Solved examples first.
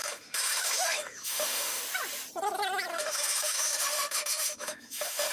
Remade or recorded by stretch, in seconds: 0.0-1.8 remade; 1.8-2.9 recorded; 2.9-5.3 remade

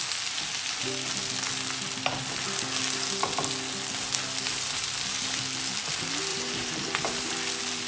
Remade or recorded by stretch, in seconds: 0.0-6.3 recorded; 6.3-7.3 remade; 7.3-7.9 recorded